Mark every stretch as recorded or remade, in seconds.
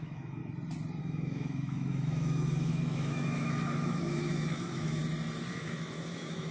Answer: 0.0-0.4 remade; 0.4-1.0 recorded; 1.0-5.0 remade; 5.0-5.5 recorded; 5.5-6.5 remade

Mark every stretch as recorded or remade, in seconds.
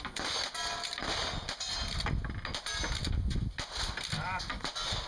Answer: 0.0-5.1 recorded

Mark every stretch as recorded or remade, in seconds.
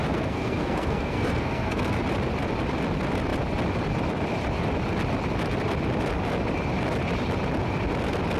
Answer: 0.0-2.0 remade; 2.0-8.4 recorded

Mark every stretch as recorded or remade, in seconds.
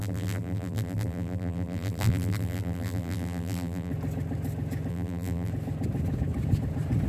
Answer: 0.0-3.9 remade; 3.9-4.9 recorded; 4.9-5.5 remade; 5.5-7.1 recorded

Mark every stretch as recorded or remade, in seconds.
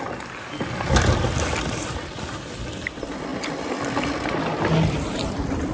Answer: 0.0-5.7 recorded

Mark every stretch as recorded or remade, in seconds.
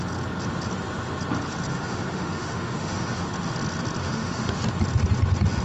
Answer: 0.0-1.7 recorded; 1.7-3.3 remade; 3.3-4.0 recorded; 4.0-4.6 remade; 4.6-5.6 recorded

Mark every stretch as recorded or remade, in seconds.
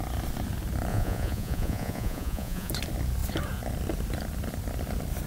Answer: 0.0-0.9 recorded; 0.9-2.7 remade; 2.7-5.3 recorded